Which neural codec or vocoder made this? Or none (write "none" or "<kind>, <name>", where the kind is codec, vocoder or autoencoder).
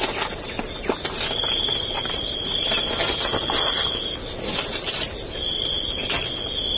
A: none